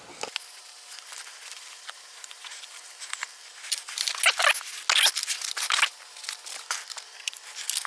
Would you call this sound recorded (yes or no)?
yes